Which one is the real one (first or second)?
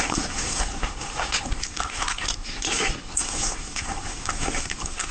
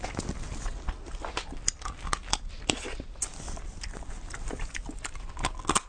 second